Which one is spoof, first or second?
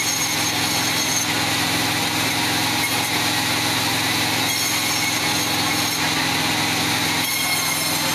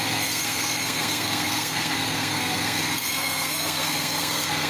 second